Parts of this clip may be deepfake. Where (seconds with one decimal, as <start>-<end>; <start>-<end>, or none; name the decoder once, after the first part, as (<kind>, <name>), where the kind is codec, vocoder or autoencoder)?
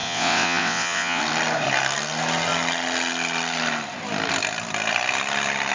0.0-1.2 (vocoder, WaveNeXt)